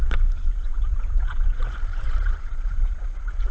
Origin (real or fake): fake